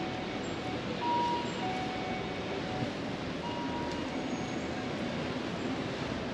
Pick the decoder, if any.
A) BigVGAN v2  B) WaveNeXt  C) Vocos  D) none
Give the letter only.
D